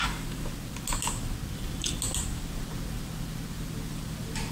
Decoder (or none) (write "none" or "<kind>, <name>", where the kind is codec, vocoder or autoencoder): none